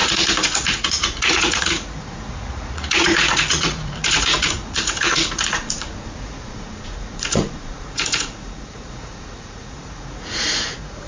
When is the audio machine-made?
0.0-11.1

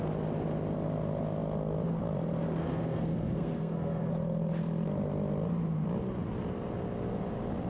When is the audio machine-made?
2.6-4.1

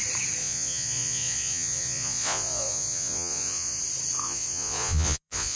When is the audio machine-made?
0.4-3.8; 4.2-5.6

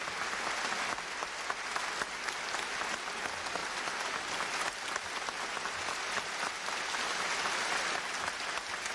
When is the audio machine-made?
none

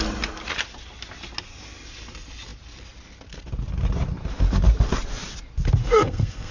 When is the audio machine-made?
5.8-6.5